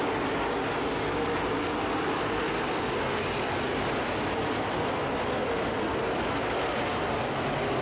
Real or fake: real